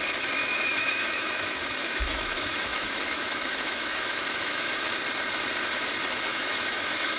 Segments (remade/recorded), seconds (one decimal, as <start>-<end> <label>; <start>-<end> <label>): 0.0-0.4 recorded; 0.4-4.7 remade; 4.7-6.3 recorded; 6.3-7.2 remade